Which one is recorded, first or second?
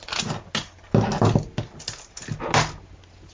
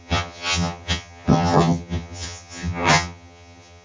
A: first